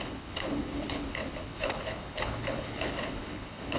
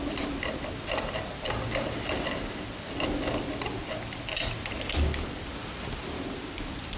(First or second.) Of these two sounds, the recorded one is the second